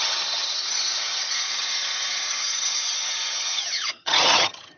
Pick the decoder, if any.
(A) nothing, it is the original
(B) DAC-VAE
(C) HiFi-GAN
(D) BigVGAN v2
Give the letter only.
C